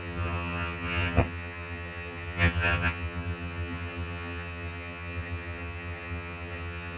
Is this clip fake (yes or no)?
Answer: yes